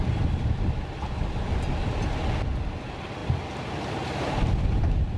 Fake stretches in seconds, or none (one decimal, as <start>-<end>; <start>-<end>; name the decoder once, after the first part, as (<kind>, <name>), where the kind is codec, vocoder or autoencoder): none